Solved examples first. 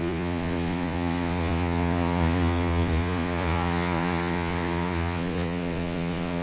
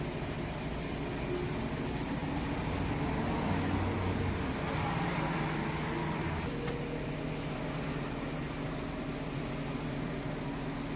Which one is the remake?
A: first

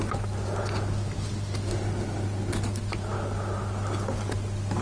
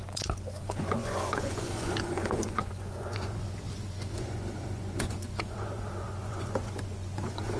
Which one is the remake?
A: second